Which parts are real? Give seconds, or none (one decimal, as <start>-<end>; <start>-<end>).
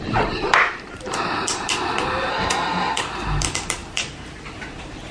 0.0-2.3; 3.0-5.1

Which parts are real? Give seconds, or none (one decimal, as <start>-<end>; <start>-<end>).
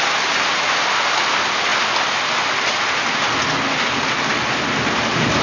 0.0-5.4